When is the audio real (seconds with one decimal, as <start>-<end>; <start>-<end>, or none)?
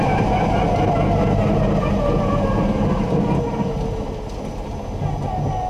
0.0-5.7